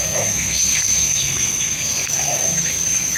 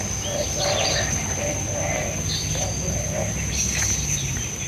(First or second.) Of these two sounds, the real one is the second